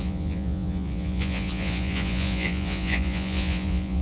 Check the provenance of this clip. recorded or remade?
remade